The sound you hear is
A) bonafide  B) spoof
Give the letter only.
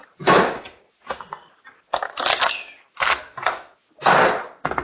A